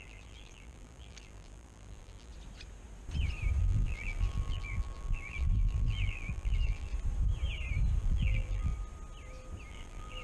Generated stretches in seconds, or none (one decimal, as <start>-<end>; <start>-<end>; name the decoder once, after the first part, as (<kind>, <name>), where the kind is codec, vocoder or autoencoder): 0.0-2.3 (vocoder, BigVGAN v2); 3.6-6.9; 8.0-8.7; 9.7-10.2